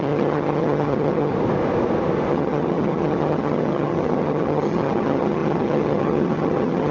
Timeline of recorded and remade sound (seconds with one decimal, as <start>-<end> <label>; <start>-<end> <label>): 0.0-1.3 remade; 1.3-2.3 recorded; 2.3-6.9 remade